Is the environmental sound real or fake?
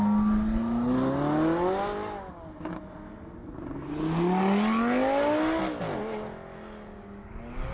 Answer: real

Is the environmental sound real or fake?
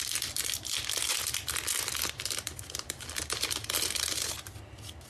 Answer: real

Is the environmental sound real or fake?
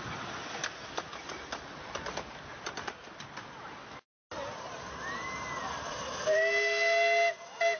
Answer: real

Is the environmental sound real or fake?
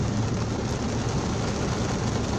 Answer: real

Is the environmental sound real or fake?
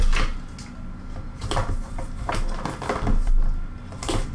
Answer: real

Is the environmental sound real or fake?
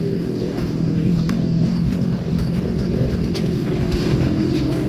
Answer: fake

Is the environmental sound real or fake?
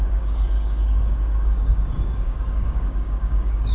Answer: fake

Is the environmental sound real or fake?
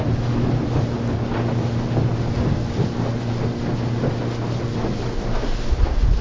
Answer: real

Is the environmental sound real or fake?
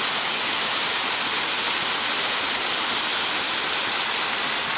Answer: real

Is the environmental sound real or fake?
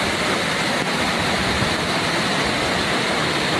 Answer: real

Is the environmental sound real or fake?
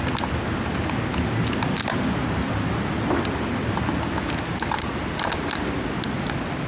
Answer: real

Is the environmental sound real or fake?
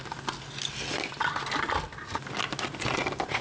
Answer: real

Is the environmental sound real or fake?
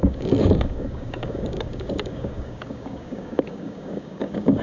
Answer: fake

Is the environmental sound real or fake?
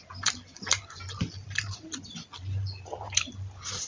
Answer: real